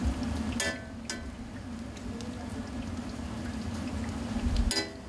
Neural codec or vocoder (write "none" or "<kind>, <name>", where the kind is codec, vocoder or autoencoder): none